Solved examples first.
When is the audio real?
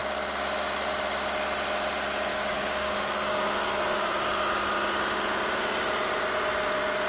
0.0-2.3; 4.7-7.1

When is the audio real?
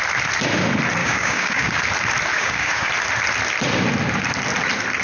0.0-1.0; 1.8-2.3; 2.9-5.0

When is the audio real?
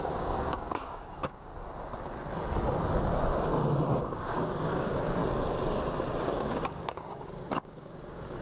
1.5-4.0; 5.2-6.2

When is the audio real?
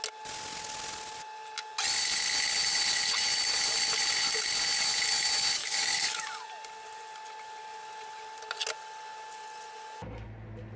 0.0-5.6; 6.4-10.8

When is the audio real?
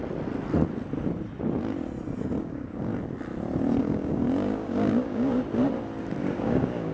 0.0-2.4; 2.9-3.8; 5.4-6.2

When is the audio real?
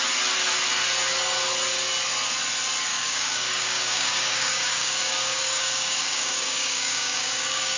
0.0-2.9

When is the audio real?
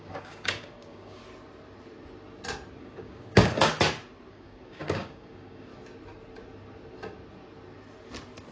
1.2-2.8; 3.7-4.3; 5.7-8.5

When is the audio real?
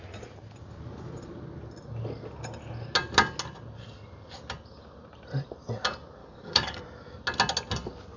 0.0-6.2; 6.8-8.2